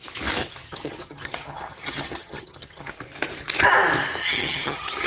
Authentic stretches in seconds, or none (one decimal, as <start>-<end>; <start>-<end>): 0.0-0.4; 2.9-4.2